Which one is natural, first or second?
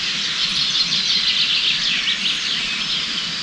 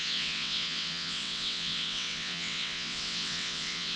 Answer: first